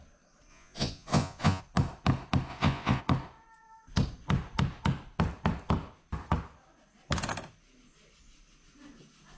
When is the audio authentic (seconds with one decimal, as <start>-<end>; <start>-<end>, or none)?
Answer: 0.0-0.5; 1.6-2.5; 3.0-9.4